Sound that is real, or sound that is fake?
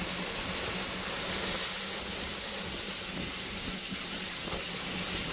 real